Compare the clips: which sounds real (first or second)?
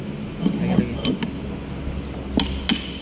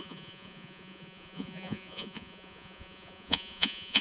first